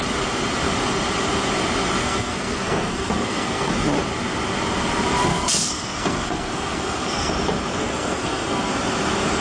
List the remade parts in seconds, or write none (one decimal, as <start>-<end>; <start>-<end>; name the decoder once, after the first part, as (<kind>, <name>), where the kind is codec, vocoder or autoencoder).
2.0-3.7 (codec, SNAC); 5.3-7.3; 7.7-8.7